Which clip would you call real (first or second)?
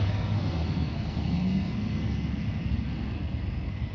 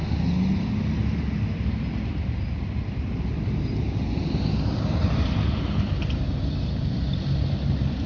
second